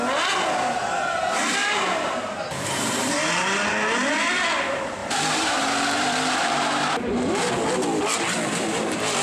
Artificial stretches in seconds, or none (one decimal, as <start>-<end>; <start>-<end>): 1.6-3.3; 5.0-7.5